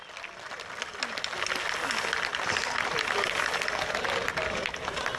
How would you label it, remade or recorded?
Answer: recorded